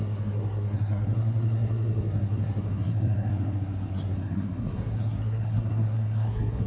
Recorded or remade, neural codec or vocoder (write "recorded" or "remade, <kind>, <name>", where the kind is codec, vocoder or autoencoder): remade, codec, SNAC